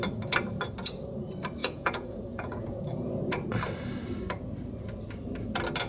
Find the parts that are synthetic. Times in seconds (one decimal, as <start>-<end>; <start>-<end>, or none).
1.6-3.1